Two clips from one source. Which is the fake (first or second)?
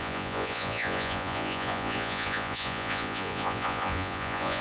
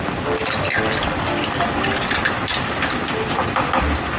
first